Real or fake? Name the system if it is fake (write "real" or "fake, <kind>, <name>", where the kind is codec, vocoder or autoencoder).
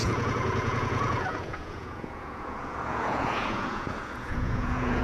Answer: fake, vocoder, Vocos